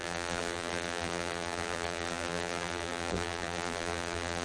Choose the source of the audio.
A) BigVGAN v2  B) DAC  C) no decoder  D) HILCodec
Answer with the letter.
A